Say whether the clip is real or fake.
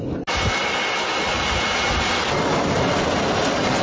real